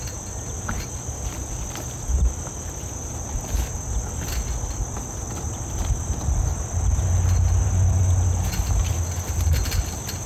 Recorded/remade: recorded